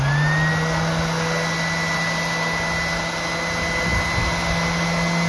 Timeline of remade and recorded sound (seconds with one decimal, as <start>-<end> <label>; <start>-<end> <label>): 0.0-5.3 recorded